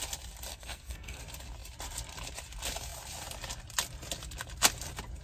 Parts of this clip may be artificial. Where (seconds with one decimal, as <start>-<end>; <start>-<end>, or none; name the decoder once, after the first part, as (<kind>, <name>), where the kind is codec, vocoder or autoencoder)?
0.5-1.2 (codec, SNAC)